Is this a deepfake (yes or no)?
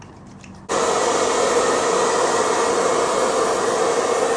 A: no